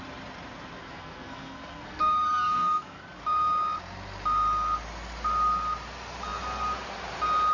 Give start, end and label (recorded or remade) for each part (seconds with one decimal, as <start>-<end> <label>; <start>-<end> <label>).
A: 0.0-0.8 recorded; 0.8-3.0 remade; 3.0-7.5 recorded